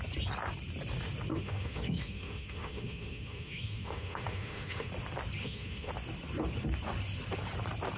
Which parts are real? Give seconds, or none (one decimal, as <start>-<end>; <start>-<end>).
0.0-1.3; 4.9-5.4; 5.9-8.0